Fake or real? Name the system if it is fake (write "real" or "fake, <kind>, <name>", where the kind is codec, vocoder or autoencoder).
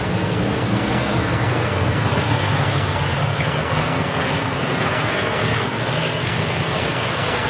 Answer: fake, codec, SNAC